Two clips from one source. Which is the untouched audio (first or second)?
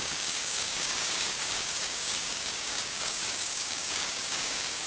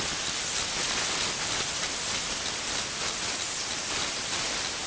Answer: second